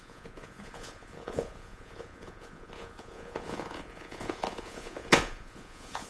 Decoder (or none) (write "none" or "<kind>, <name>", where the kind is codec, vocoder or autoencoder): vocoder, Vocos